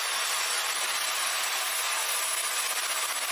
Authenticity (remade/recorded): recorded